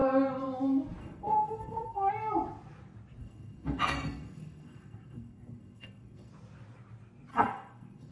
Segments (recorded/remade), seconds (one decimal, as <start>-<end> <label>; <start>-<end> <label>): 0.0-1.0 recorded; 1.0-2.1 remade; 2.1-3.2 recorded; 3.2-6.3 remade; 6.3-7.3 recorded; 7.3-8.1 remade